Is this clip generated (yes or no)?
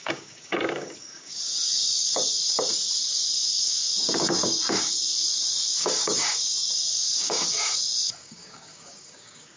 yes